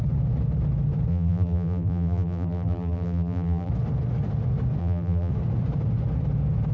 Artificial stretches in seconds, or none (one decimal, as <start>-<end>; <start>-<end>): 1.1-3.7; 4.8-5.3